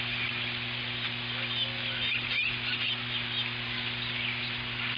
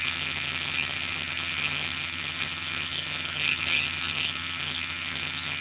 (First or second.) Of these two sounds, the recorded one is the first